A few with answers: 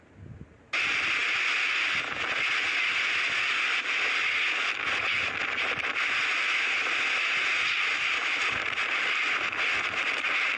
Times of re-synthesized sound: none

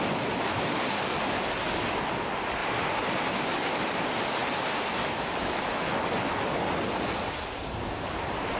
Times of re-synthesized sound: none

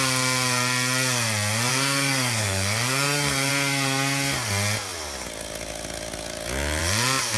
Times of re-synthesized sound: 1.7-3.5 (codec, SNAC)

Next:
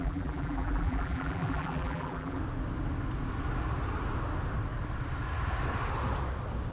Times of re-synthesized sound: 0.0-2.4 (vocoder, BigVGAN v2)